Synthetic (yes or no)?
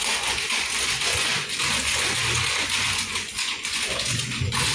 yes